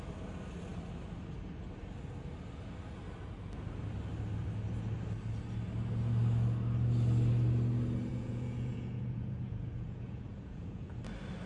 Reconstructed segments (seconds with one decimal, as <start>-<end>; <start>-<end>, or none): 8.1-10.9